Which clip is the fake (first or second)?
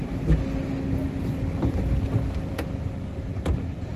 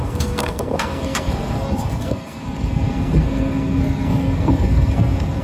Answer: second